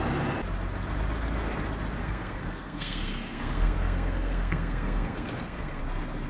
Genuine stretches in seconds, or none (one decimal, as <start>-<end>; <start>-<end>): 0.0-2.0; 5.8-6.3